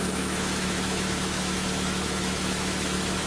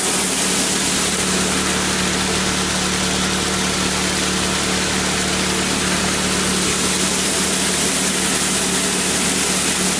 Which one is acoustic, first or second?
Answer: second